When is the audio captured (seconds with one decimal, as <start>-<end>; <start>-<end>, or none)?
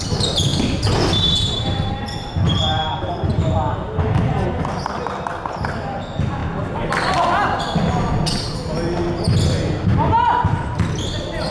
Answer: 0.0-0.5; 2.0-11.5